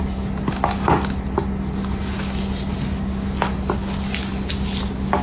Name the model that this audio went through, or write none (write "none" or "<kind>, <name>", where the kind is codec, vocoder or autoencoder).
none